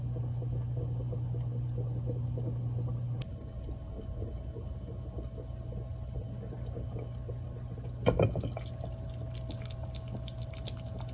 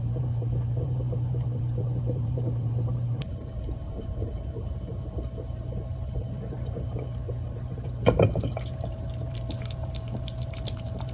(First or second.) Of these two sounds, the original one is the first